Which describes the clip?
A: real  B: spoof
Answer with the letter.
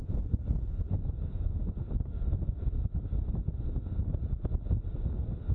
A